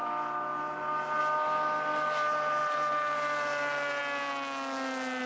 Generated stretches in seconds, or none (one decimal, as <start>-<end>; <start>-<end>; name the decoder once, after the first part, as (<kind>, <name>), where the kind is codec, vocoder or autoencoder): none